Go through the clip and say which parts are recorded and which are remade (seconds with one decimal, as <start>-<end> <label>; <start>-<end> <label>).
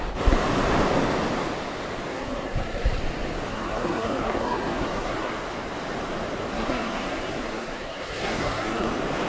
0.0-2.1 recorded; 2.1-3.0 remade; 3.0-3.5 recorded; 3.5-5.3 remade; 5.3-6.5 recorded; 6.5-8.9 remade; 8.9-9.3 recorded